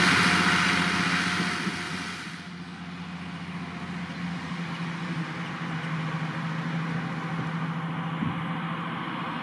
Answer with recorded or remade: recorded